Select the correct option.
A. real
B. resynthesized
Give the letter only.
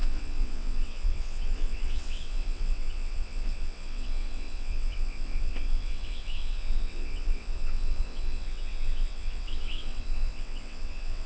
B